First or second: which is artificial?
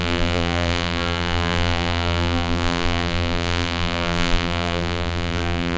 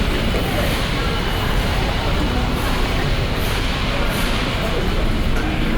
first